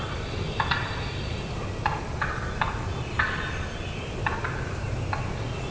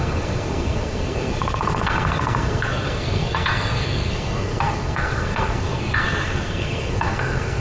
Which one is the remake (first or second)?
second